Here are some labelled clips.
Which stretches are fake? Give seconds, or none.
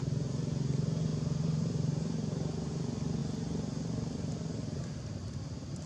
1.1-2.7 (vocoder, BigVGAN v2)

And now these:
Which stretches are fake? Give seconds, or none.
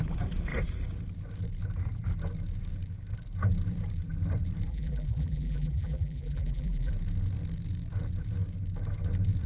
4.7-6.9 (vocoder, BigVGAN v2)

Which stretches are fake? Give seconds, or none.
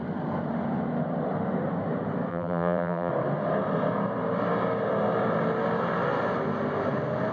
2.3-3.1 (vocoder, BigVGAN v2)